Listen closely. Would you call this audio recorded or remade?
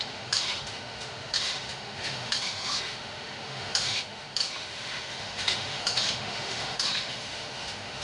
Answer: remade